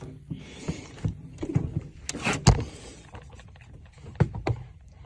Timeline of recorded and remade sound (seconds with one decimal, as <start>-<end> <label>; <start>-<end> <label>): 0.0-5.1 recorded